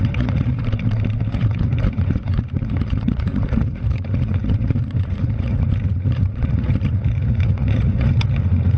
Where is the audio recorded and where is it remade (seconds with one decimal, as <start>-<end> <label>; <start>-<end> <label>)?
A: 0.0-0.6 remade; 0.6-1.3 recorded; 1.3-8.8 remade